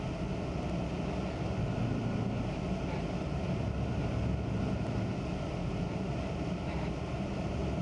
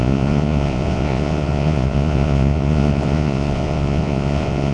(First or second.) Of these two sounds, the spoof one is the second